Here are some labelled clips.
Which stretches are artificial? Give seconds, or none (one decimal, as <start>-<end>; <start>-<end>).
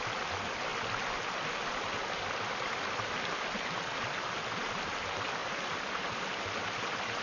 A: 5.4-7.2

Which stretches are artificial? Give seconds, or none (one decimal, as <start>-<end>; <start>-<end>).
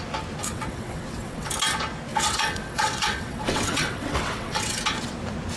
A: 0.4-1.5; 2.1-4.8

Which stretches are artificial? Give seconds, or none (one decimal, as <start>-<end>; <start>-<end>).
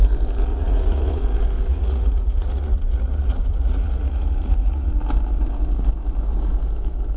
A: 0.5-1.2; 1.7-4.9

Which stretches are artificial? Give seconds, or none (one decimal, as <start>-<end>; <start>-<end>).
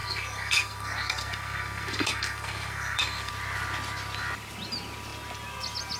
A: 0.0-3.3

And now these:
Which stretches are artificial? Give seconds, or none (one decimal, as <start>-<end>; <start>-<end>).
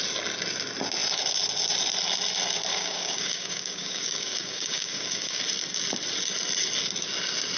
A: 2.7-5.4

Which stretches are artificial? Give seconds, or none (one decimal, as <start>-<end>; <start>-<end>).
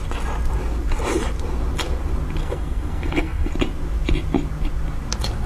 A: 2.4-3.5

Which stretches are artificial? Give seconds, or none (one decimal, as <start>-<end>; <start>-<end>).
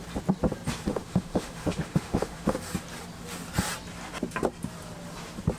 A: 0.9-2.6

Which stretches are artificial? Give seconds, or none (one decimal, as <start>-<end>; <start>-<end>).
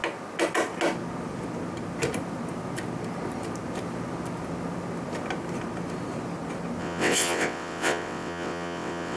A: 6.8-9.2